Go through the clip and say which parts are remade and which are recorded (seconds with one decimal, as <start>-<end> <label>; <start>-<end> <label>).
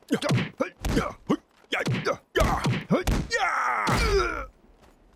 0.0-4.1 recorded; 4.1-4.8 remade; 4.8-5.2 recorded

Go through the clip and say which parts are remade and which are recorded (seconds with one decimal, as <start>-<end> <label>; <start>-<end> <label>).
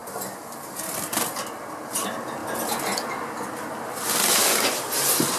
0.0-5.4 recorded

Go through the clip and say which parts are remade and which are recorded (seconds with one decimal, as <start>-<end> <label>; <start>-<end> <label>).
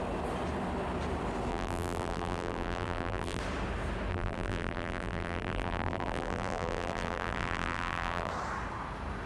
0.0-1.5 recorded; 1.5-3.4 remade; 3.4-4.1 recorded; 4.1-8.3 remade; 8.3-9.3 recorded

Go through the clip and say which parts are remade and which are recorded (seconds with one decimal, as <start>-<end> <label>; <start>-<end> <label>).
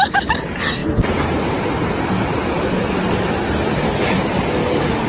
0.0-5.1 recorded